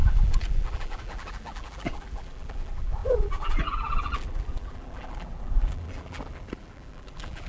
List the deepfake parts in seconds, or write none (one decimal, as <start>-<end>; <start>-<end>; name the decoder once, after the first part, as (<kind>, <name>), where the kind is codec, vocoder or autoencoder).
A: 0.0-7.5 (vocoder, BigVGAN v2)